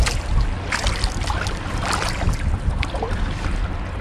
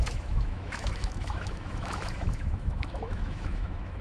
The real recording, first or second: first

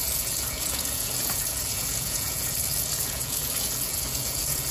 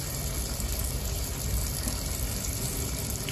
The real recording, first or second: second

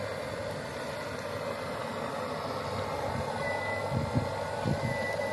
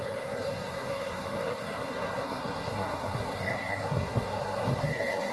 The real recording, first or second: first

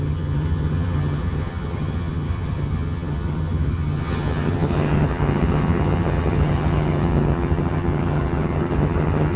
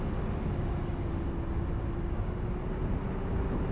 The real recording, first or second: second